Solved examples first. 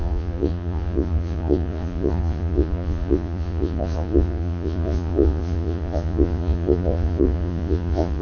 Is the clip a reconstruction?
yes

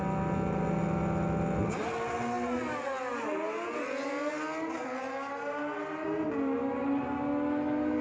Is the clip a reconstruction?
no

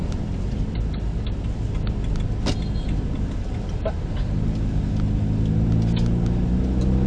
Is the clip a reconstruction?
no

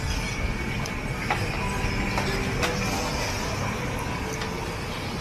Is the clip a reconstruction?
no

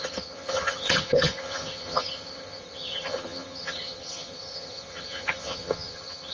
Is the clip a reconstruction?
yes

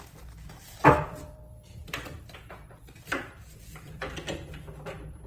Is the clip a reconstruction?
yes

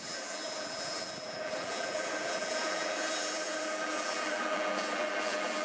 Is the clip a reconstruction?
yes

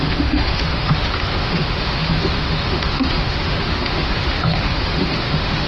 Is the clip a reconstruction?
yes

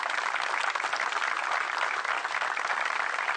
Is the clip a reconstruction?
no